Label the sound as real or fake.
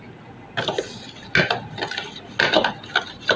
real